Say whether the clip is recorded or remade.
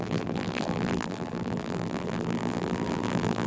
remade